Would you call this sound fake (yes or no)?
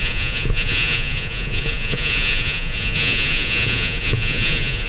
yes